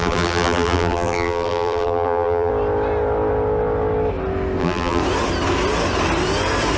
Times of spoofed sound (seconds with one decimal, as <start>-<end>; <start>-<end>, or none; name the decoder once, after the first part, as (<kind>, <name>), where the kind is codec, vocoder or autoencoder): 0.0-2.5 (vocoder, BigVGAN v2); 4.6-5.0